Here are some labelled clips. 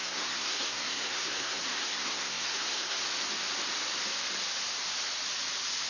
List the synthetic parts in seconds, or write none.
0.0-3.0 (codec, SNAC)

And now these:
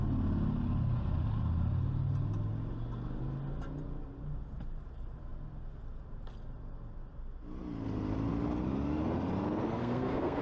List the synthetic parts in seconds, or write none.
9.8-10.4 (codec, SNAC)

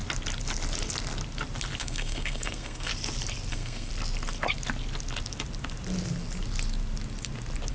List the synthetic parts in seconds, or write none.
1.8-2.9 (codec, SNAC); 3.5-3.9

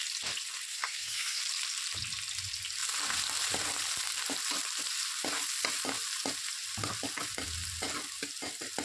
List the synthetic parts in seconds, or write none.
0.7-1.4 (codec, SNAC)

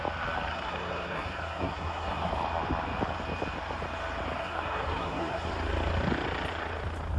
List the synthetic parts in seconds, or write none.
0.5-2.3 (codec, SNAC); 4.4-5.5

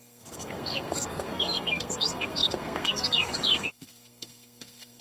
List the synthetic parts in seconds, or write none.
0.0-5.0 (codec, SNAC)